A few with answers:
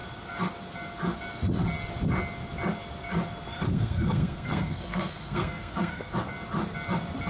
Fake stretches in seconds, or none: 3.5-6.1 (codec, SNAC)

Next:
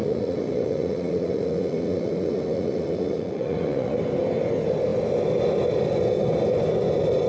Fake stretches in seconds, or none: 0.0-4.0 (vocoder, Vocos)

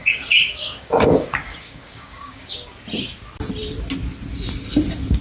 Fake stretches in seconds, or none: 0.0-2.7 (codec, DAC)

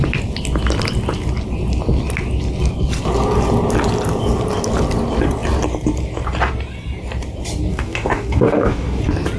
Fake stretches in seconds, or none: 7.7-9.0 (codec, DAC)

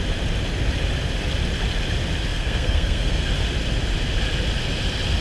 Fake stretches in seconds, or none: 2.3-3.3 (codec, SNAC)

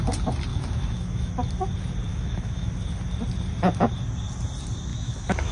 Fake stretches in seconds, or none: 0.5-1.3 (autoencoder, DAC-VAE); 2.1-2.7; 4.9-5.5